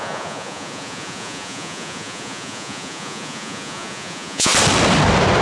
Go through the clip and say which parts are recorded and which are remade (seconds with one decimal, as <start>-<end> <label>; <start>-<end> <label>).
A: 0.0-4.5 remade; 4.5-5.4 recorded